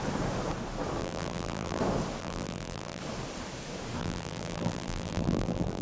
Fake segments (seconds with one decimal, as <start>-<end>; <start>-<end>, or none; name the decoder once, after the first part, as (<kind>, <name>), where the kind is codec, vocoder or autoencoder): 1.0-1.8 (vocoder, BigVGAN v2); 2.2-3.0; 4.0-5.8